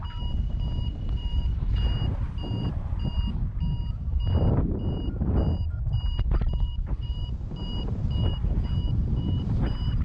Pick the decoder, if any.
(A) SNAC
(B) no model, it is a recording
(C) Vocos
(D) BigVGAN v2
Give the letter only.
D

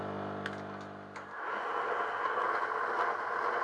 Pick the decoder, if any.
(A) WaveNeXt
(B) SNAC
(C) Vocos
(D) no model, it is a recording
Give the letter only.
D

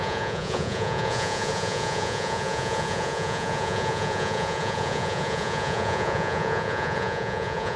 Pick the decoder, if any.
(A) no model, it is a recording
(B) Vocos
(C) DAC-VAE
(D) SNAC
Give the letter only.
B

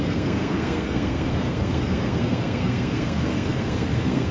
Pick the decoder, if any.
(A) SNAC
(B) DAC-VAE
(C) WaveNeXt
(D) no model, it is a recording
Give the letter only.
A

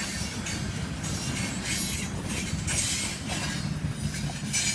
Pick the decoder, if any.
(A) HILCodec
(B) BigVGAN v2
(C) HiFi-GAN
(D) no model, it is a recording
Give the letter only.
D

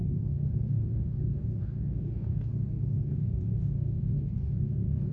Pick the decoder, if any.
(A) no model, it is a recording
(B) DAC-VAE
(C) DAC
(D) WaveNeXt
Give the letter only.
C